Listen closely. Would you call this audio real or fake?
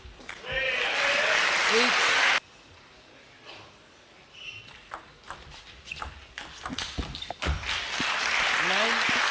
real